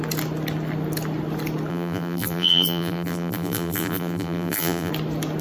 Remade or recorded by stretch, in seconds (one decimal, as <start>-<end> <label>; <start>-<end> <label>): 0.0-1.7 recorded; 1.7-4.9 remade; 4.9-5.4 recorded